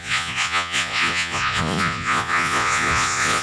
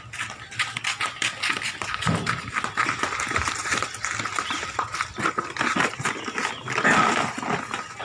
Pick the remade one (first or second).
first